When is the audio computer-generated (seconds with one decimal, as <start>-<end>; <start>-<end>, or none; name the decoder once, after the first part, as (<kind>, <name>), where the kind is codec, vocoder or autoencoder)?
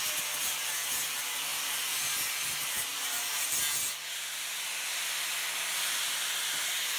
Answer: none